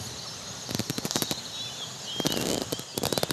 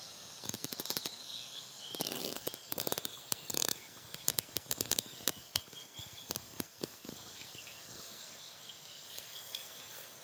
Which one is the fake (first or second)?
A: second